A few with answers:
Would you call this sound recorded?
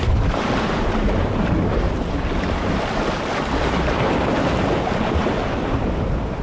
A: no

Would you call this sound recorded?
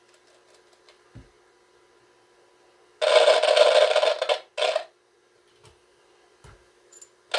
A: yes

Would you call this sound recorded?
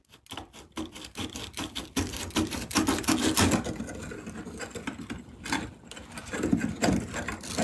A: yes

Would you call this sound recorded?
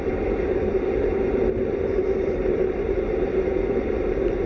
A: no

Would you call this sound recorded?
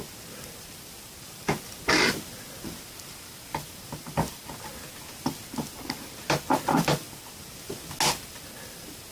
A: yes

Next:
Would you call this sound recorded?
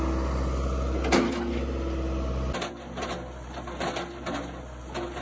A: yes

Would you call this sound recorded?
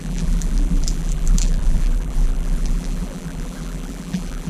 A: no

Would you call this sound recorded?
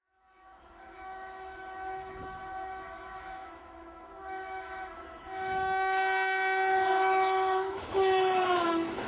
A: no